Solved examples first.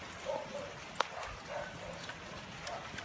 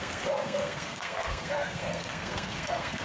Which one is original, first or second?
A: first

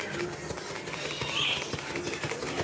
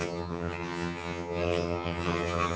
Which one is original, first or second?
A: first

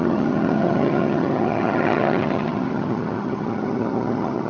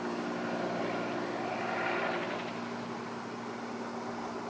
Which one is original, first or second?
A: second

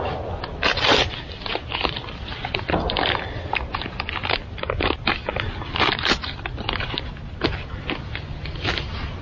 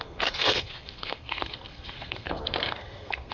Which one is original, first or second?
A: first